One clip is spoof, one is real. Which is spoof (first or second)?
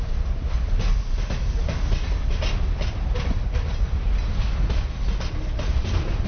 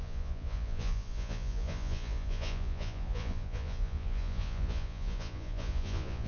second